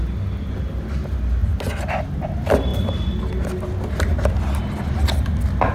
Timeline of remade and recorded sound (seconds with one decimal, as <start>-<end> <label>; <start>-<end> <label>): 0.0-5.7 recorded